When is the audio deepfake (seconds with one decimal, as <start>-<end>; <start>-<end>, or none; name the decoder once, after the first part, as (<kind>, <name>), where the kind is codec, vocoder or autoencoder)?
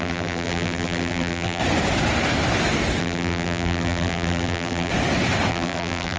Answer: 0.0-1.6 (vocoder, BigVGAN v2); 3.0-4.9; 5.5-6.2